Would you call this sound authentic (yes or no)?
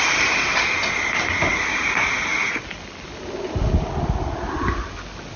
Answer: yes